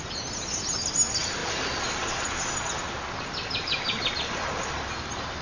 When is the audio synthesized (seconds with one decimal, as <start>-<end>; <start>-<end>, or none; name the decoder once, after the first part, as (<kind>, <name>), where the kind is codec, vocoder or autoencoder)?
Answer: none